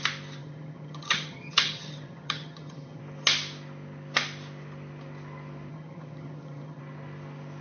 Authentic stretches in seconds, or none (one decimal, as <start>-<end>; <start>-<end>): 0.0-0.4; 3.0-5.7; 6.8-7.6